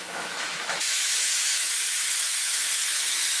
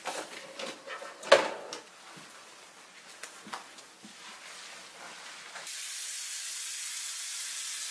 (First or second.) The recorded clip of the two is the second